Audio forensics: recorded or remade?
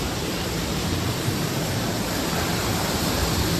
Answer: remade